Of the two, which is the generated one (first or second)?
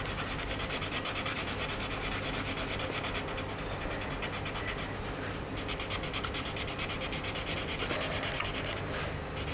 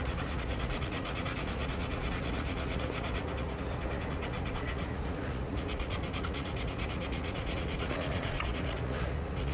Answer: second